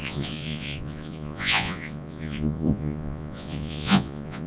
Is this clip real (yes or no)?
no